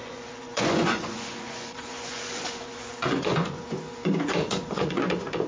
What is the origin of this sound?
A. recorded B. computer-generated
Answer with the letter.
B